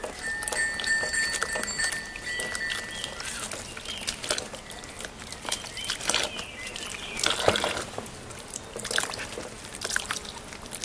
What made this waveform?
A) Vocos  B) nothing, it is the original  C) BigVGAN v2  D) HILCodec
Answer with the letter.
B